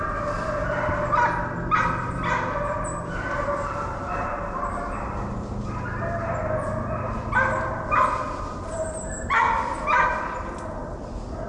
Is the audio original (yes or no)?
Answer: yes